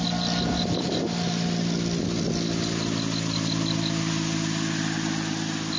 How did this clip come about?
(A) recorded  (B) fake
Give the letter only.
A